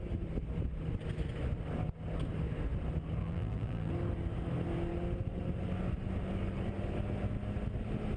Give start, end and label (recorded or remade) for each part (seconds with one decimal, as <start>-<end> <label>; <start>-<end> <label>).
0.0-3.2 recorded; 3.2-3.9 remade; 3.9-8.2 recorded

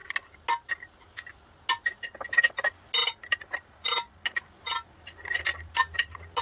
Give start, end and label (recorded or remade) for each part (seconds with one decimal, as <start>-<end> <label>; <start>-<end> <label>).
0.0-3.0 recorded; 3.0-4.6 remade; 4.6-5.5 recorded; 5.5-6.4 remade

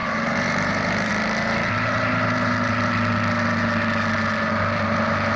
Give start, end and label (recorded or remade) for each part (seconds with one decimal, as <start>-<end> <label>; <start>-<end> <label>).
0.0-1.1 remade; 1.1-5.4 recorded

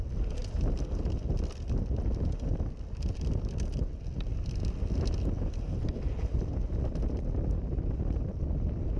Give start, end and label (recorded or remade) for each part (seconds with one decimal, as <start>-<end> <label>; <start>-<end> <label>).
0.0-9.0 recorded

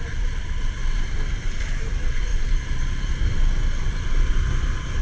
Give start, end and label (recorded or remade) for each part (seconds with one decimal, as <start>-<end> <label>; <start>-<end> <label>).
0.0-0.8 remade; 0.8-1.4 recorded; 1.4-2.3 remade; 2.3-4.3 recorded; 4.3-5.0 remade

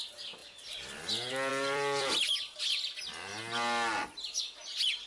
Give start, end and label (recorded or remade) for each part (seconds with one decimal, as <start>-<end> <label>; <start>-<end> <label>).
0.0-0.4 recorded; 0.4-1.1 remade; 1.1-1.5 recorded; 1.5-2.3 remade; 2.3-5.1 recorded

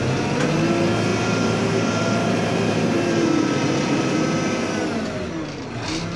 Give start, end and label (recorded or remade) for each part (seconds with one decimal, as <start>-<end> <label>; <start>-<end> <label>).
0.0-1.1 recorded; 1.1-4.2 remade; 4.2-6.2 recorded

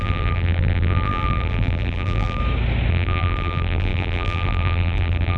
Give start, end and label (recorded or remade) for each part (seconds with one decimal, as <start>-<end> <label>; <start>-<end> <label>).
0.0-2.4 remade; 2.4-2.9 recorded; 2.9-5.4 remade